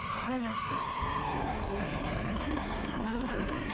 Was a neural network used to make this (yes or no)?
yes